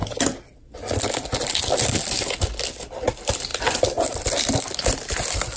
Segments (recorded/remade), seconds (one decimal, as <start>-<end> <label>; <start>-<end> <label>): 0.0-3.5 recorded; 3.5-5.0 remade; 5.0-5.6 recorded